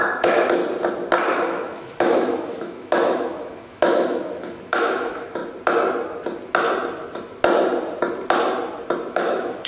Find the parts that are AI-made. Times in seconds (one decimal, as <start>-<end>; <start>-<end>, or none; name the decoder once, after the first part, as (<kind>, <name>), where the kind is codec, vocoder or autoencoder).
0.0-0.6 (autoencoder, DAC-VAE); 1.3-5.4; 9.1-9.7